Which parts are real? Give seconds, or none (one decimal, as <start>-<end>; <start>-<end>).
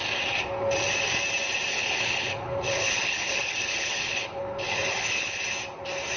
0.0-1.7; 5.4-6.2